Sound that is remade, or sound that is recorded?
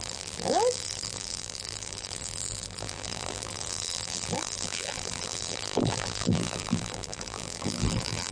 remade